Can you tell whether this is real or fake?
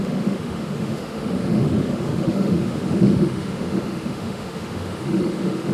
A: fake